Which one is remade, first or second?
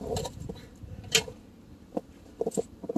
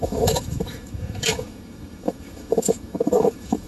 second